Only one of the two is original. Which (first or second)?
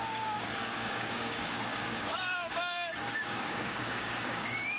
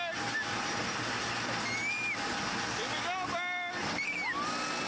second